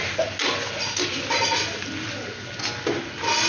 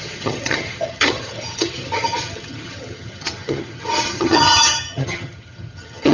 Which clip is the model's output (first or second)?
second